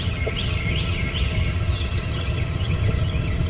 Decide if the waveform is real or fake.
fake